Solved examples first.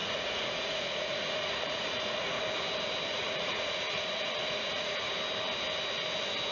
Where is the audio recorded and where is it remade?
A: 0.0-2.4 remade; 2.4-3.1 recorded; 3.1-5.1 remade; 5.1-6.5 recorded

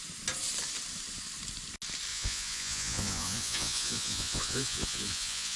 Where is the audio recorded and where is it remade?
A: 0.0-2.1 recorded; 2.1-5.6 remade

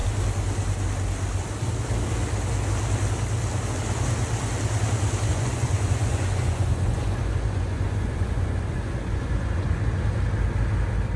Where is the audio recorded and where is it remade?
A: 0.0-5.3 recorded; 5.3-10.0 remade; 10.0-11.2 recorded

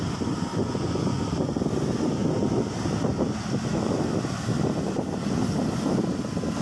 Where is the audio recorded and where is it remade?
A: 0.0-0.5 recorded; 0.5-1.2 remade; 1.2-6.6 recorded

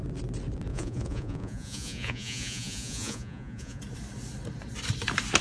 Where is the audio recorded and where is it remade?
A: 0.0-0.7 recorded; 0.7-3.8 remade; 3.8-5.4 recorded

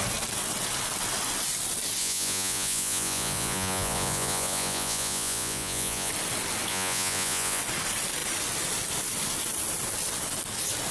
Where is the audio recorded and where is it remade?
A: 0.0-2.0 recorded; 2.0-6.1 remade; 6.1-6.7 recorded; 6.7-7.6 remade; 7.6-10.9 recorded

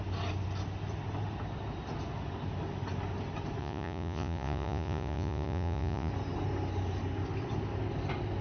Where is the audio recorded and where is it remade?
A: 0.0-3.6 recorded; 3.6-6.1 remade; 6.1-8.4 recorded

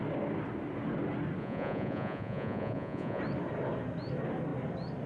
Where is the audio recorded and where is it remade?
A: 0.0-1.4 recorded; 1.4-3.2 remade; 3.2-5.1 recorded